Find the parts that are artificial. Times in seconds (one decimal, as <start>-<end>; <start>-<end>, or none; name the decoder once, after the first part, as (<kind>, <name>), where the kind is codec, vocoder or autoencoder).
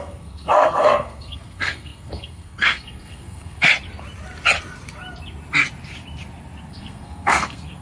0.0-3.7 (codec, SNAC); 6.7-7.8